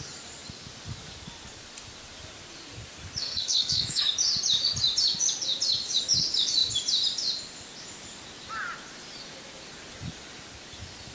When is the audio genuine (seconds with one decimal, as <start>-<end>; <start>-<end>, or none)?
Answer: 0.0-3.2; 4.0-11.1